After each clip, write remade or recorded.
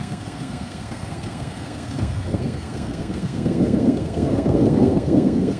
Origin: remade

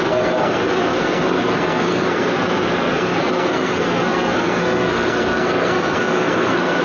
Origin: remade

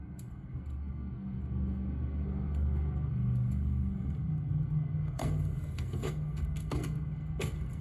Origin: remade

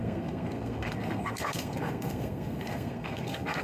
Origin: remade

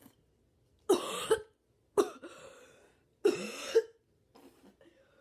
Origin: recorded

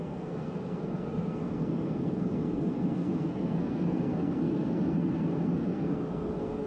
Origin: remade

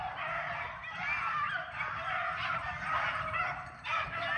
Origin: recorded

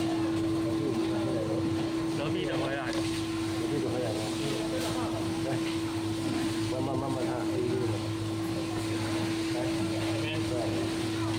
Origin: recorded